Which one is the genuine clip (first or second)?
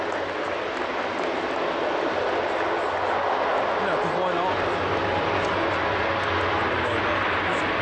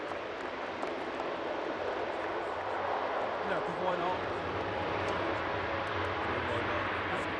first